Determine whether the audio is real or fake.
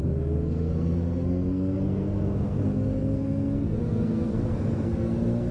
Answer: fake